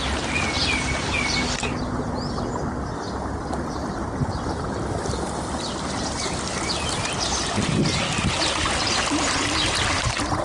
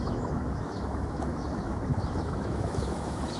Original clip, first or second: first